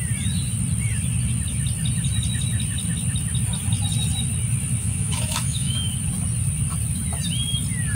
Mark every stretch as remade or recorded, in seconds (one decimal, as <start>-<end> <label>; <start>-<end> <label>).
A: 0.0-4.8 recorded; 4.8-5.9 remade; 5.9-7.9 recorded